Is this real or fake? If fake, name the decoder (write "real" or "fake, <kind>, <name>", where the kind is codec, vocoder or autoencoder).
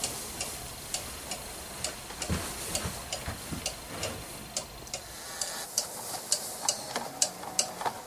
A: real